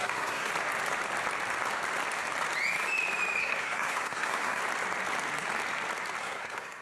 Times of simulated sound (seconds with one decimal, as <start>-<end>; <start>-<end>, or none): 0.0-0.5; 3.4-4.6; 6.2-6.8